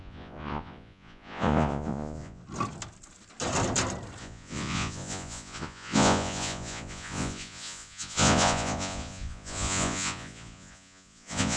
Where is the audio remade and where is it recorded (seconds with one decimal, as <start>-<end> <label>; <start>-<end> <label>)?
0.0-2.4 remade; 2.4-4.2 recorded; 4.2-11.6 remade